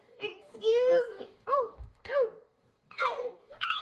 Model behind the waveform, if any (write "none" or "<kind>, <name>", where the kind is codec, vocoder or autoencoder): codec, DAC